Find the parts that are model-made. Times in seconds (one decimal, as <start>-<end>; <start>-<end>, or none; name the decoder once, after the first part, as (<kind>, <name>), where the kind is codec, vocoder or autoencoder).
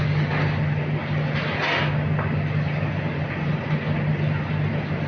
none